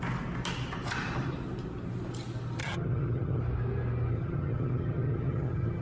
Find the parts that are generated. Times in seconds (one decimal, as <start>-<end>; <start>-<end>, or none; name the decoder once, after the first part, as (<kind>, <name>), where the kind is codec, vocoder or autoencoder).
2.6-3.4 (vocoder, HiFi-GAN); 4.1-5.8